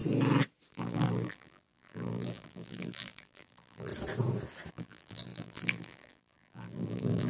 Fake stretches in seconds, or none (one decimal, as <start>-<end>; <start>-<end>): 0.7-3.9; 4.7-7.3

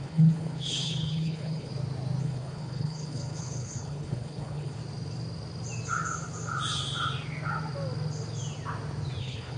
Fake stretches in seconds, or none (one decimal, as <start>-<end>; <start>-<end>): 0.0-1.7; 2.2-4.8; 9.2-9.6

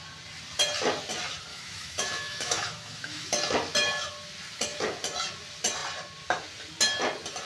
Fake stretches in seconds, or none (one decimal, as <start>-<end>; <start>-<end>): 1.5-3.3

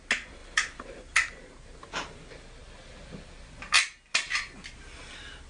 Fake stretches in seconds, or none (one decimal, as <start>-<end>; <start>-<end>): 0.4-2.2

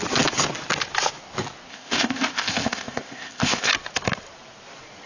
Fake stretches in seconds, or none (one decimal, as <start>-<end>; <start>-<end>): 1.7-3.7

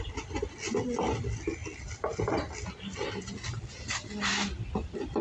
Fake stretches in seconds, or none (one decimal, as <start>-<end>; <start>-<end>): none